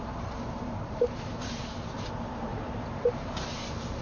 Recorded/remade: remade